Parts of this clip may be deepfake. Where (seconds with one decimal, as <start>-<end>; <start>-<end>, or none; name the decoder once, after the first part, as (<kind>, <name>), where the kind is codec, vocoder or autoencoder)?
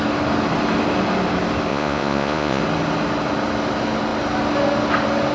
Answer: 1.7-2.6 (vocoder, Vocos)